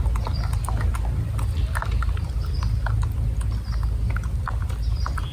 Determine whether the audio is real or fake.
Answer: real